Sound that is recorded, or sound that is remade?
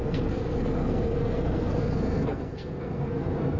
remade